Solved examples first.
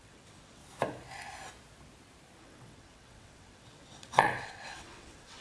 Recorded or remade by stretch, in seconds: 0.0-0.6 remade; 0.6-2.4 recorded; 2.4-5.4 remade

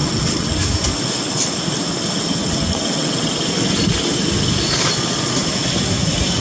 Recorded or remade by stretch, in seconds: 0.0-0.6 remade; 0.6-2.4 recorded; 2.4-3.3 remade; 3.3-6.4 recorded

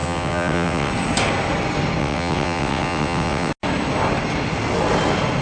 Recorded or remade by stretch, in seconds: 0.0-0.9 remade; 0.9-2.0 recorded; 2.0-3.5 remade; 3.5-5.4 recorded

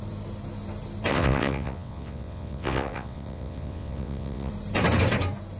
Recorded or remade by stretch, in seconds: 0.0-1.1 recorded; 1.1-4.5 remade; 4.5-5.6 recorded

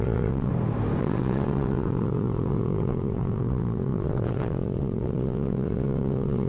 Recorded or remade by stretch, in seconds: 0.0-0.5 remade; 0.5-1.0 recorded; 1.0-6.5 remade

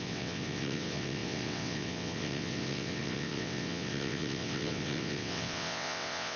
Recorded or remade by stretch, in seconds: 0.0-6.4 remade

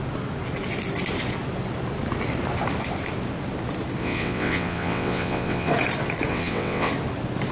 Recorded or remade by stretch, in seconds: 0.0-4.0 recorded; 4.0-5.7 remade; 5.7-6.3 recorded; 6.3-6.9 remade; 6.9-7.5 recorded

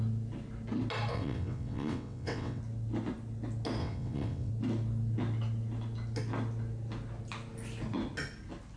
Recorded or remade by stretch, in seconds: 0.0-1.1 recorded; 1.1-2.6 remade; 2.6-3.8 recorded; 3.8-4.5 remade; 4.5-8.8 recorded